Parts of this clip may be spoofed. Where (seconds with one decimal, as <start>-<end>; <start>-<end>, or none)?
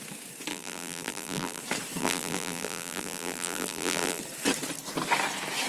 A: 0.5-1.6; 2.0-4.2